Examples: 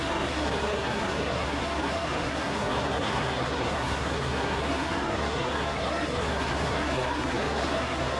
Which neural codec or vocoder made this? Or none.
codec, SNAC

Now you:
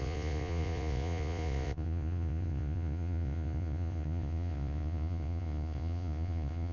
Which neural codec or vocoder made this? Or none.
vocoder, Vocos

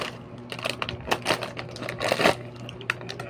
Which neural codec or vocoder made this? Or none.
none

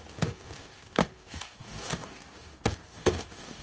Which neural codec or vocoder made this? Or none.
codec, DAC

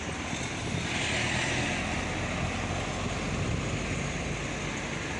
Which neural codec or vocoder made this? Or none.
none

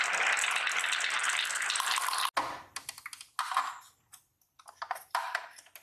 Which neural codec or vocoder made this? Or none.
none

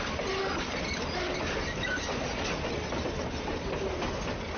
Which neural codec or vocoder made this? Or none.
none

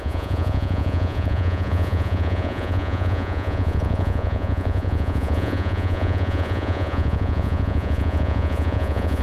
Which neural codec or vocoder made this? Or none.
vocoder, Vocos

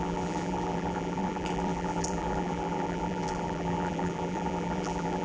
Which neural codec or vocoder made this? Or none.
vocoder, BigVGAN v2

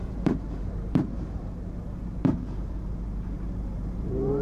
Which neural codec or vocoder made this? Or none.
vocoder, BigVGAN v2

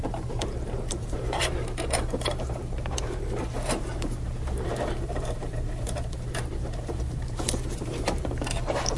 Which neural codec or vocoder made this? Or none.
vocoder, BigVGAN v2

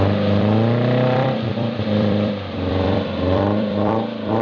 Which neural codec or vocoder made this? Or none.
vocoder, BigVGAN v2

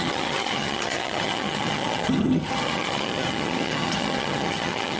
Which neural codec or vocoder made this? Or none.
vocoder, HiFi-GAN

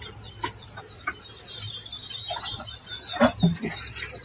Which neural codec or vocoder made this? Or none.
none